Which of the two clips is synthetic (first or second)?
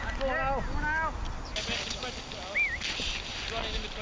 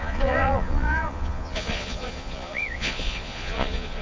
second